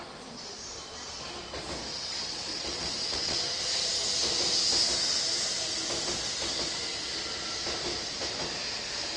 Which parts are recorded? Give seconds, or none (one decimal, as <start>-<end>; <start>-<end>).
0.0-1.9; 3.6-9.2